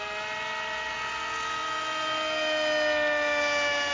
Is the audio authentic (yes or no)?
yes